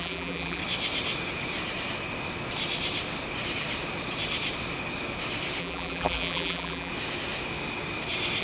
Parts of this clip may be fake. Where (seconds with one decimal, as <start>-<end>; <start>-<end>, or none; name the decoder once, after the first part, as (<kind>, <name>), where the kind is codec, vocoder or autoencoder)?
0.0-0.6 (vocoder, BigVGAN v2); 5.6-6.9